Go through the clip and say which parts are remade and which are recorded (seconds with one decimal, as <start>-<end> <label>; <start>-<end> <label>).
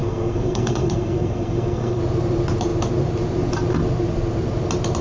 0.0-2.0 remade; 2.0-5.0 recorded